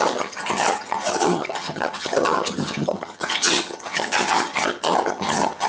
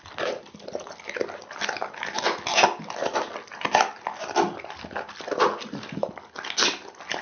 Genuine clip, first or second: second